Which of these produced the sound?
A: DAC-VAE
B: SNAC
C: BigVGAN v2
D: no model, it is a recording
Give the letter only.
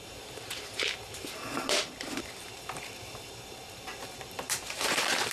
C